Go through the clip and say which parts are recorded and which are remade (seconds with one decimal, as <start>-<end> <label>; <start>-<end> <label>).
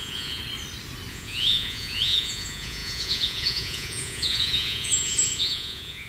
0.0-0.4 remade; 0.4-1.1 recorded; 1.1-6.1 remade